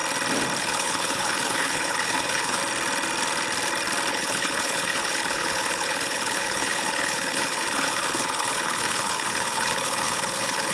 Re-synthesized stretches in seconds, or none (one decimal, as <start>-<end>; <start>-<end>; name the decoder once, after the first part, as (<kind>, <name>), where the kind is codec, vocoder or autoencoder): 0.6-2.6 (codec, HILCodec); 4.1-10.7